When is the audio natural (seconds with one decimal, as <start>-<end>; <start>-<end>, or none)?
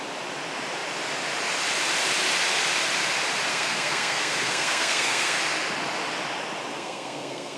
0.0-3.5; 5.4-6.7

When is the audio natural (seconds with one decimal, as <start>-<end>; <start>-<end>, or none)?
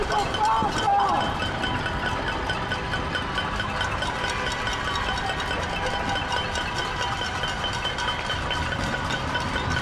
0.0-9.8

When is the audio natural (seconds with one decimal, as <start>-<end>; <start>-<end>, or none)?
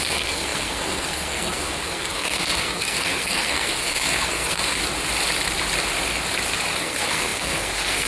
4.8-6.8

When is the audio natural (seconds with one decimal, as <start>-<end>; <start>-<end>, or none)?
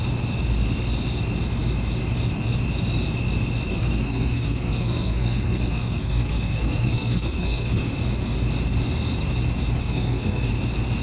0.0-3.7; 7.9-9.8; 10.5-11.0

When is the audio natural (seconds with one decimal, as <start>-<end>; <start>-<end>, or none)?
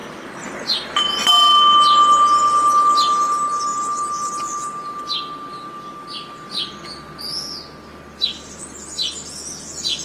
0.0-10.0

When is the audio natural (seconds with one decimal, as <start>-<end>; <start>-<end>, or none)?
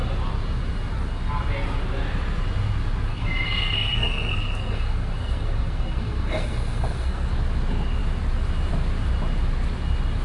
0.0-3.1; 7.3-10.2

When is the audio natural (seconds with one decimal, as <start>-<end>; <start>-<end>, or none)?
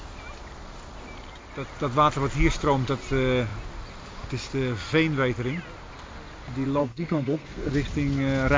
0.0-6.8; 7.7-8.6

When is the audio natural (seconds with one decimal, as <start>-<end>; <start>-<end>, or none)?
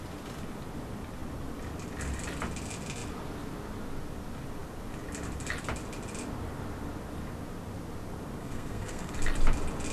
0.0-8.4; 9.1-9.9